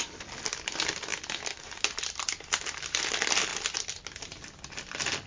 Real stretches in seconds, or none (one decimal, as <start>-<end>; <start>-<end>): 0.0-5.3

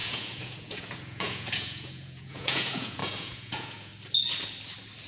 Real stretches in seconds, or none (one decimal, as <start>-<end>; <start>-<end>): 3.9-5.1

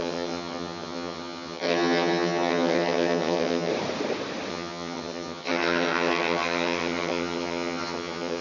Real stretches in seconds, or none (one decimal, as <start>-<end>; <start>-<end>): 3.7-4.5

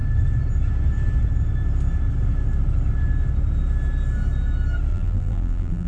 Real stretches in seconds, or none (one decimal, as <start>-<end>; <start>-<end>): 0.0-4.9

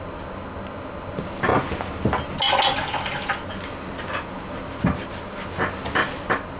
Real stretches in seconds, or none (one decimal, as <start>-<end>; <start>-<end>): 0.0-6.6

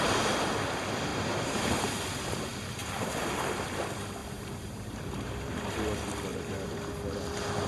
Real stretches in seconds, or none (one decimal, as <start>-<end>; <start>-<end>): 0.0-1.1; 1.9-2.8; 3.3-4.2; 5.7-6.3; 6.9-7.7

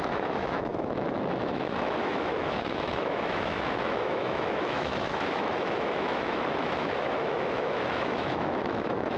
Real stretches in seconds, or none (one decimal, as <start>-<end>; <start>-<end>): none